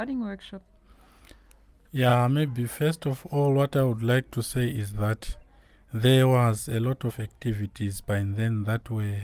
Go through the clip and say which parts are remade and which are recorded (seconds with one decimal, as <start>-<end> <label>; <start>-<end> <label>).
0.0-9.2 recorded